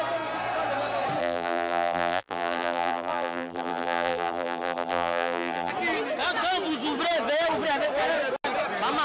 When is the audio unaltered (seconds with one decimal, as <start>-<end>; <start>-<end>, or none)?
0.0-1.2; 5.7-9.0